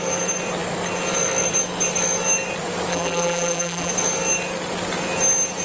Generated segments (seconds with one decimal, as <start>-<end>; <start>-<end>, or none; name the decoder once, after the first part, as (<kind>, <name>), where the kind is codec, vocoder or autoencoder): 2.9-3.9 (vocoder, BigVGAN v2)